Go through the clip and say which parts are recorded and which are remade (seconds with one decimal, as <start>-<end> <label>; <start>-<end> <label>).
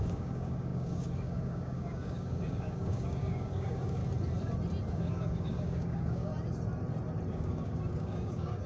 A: 0.0-4.0 remade; 4.0-4.9 recorded; 4.9-6.3 remade; 6.3-7.3 recorded; 7.3-8.7 remade